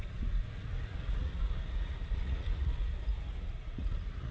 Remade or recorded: remade